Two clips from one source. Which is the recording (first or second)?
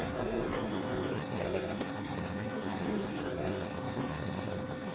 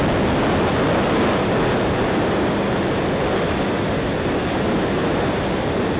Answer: second